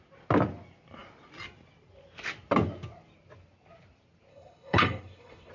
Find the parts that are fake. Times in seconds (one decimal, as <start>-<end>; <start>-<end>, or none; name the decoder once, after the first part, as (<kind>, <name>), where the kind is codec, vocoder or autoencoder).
4.3-5.5 (codec, HILCodec)